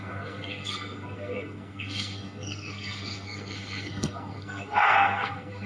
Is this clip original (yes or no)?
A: no